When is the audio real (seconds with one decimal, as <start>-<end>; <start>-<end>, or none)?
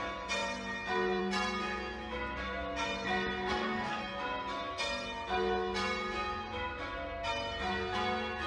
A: 0.0-3.5; 4.0-8.5